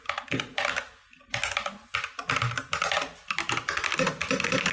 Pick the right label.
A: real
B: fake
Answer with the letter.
A